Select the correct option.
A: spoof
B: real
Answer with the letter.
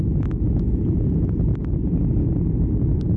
B